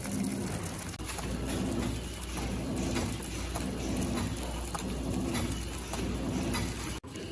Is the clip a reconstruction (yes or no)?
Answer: no